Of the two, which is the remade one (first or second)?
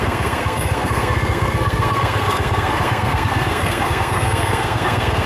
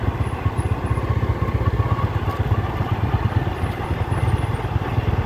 first